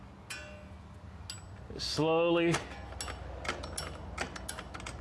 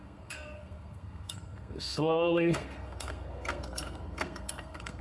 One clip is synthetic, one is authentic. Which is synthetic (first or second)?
second